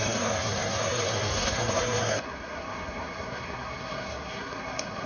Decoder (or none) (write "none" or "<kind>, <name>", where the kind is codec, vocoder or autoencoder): codec, SNAC